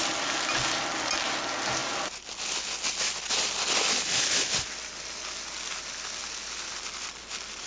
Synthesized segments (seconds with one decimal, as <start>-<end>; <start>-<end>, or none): none